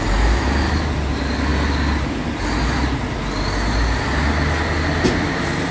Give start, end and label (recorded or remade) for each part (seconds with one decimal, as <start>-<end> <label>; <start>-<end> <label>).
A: 0.0-5.7 recorded